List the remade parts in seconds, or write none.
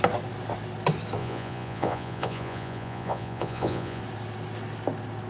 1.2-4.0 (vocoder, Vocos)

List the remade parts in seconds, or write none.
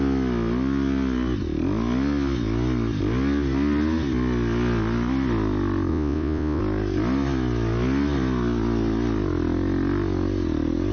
5.9-6.6 (vocoder, Vocos)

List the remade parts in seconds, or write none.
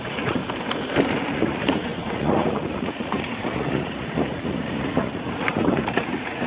0.0-0.4 (vocoder, Vocos); 1.1-6.5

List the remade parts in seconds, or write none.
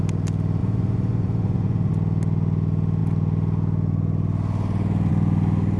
0.6-1.9 (vocoder, Vocos)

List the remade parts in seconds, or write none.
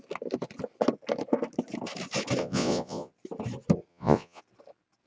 2.4-3.1 (vocoder, Vocos); 3.9-4.4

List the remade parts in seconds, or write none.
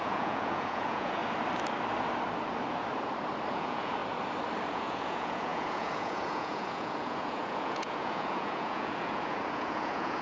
0.0-1.2 (vocoder, Vocos); 3.5-4.0; 4.7-10.2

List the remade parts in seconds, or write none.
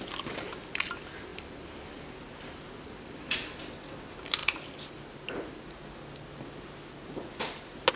none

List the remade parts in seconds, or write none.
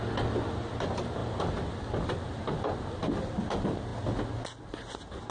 none